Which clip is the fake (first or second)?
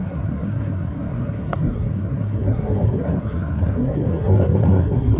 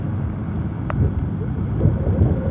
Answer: first